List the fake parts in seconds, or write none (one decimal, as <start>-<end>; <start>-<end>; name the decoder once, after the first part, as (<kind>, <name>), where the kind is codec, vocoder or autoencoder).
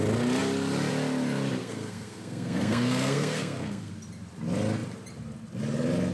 1.6-3.9 (codec, SNAC)